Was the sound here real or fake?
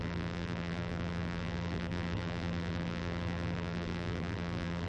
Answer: fake